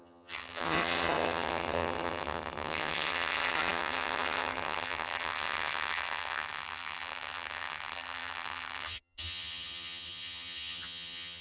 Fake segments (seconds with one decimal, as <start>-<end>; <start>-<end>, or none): 0.0-11.4